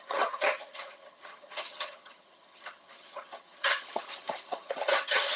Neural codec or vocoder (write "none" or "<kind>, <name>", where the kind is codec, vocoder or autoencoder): vocoder, HiFi-GAN